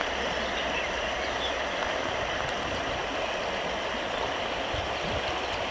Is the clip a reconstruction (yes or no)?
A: no